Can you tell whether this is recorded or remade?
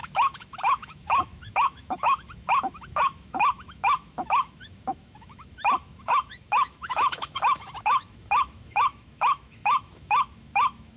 remade